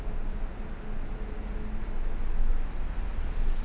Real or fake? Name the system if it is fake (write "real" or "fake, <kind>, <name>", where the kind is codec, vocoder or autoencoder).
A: real